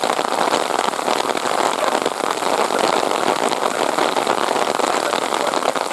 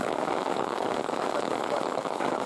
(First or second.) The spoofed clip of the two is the second